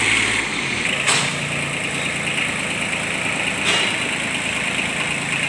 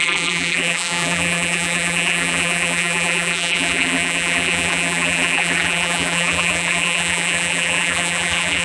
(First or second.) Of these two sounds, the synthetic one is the second